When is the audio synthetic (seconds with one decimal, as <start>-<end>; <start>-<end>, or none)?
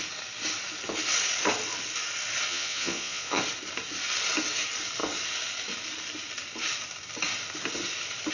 2.5-3.4